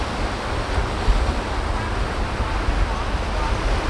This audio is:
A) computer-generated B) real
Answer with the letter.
B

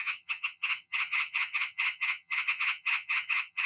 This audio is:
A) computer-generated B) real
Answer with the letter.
A